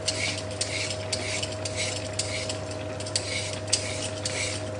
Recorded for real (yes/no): yes